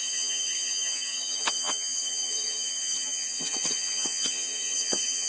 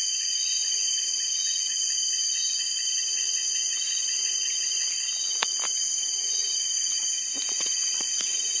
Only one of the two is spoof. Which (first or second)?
first